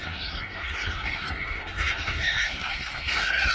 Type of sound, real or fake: fake